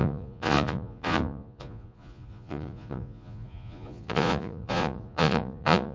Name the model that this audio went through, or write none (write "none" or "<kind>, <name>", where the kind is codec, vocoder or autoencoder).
vocoder, Vocos